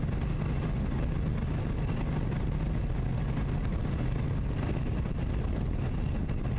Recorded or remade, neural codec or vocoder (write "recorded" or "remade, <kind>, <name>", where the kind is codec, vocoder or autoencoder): recorded